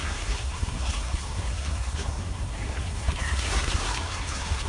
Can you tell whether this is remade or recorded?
remade